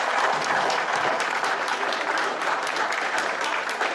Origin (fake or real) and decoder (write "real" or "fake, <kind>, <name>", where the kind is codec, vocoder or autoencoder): fake, vocoder, BigVGAN v2